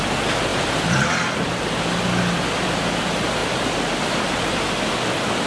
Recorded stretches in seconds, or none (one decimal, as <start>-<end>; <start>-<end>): 0.0-0.5; 1.1-3.4; 4.4-5.5